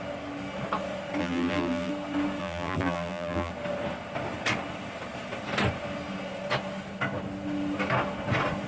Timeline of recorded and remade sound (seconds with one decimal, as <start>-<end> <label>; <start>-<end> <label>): 0.0-1.2 recorded; 1.2-1.9 remade; 1.9-2.4 recorded; 2.4-3.5 remade; 3.5-8.7 recorded